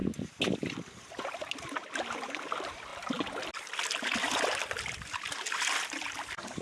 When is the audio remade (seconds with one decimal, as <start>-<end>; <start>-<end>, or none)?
none